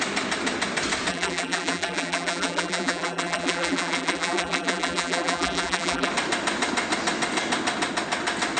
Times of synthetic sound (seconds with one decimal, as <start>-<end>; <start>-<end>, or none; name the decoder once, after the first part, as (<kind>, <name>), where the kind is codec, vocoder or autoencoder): 1.1-6.1 (vocoder, BigVGAN v2)